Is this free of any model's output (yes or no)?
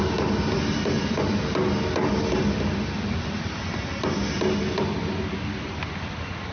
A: yes